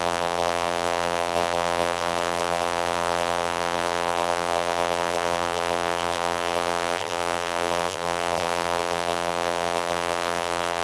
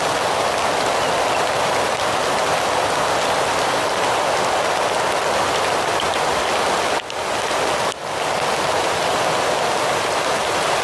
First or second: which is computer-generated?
first